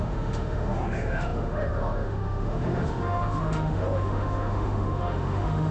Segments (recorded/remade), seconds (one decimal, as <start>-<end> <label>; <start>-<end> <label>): 0.0-5.7 remade